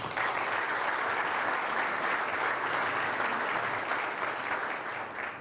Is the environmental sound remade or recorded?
recorded